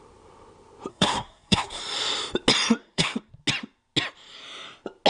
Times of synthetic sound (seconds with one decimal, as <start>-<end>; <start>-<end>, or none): 0.9-1.8; 2.8-3.3